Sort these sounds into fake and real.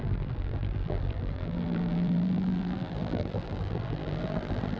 fake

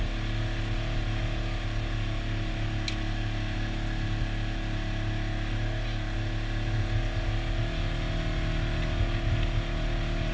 real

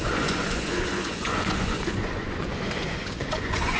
fake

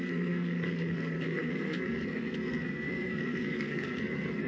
fake